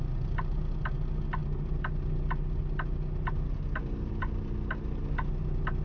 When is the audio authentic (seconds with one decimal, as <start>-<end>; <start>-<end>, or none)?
0.0-5.8